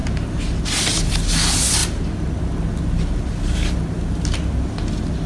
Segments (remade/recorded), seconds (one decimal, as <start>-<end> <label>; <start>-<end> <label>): 0.0-5.3 recorded